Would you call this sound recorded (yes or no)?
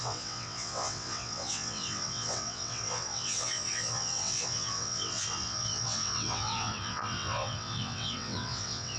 no